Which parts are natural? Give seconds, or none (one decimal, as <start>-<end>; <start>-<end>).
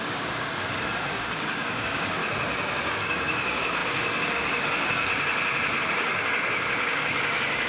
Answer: 2.2-2.9; 5.1-5.8